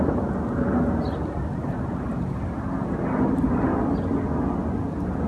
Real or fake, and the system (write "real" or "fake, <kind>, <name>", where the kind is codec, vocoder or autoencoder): real